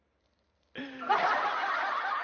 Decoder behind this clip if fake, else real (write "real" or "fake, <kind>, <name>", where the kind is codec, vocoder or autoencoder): fake, vocoder, BigVGAN v2